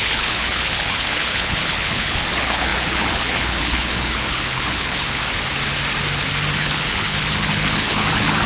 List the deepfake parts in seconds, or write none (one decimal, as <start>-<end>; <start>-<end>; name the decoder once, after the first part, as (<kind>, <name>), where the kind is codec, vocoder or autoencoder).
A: 0.0-5.2 (codec, HILCodec); 6.6-8.5